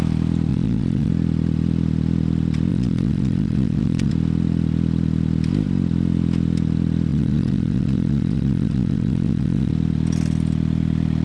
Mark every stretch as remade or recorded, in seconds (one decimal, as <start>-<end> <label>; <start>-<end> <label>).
0.0-0.5 recorded; 0.5-1.1 remade; 1.1-2.7 recorded; 2.7-4.1 remade; 4.1-7.1 recorded; 7.1-9.7 remade; 9.7-11.2 recorded